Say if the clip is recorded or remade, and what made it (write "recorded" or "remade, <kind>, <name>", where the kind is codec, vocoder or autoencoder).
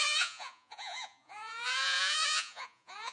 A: remade, vocoder, Vocos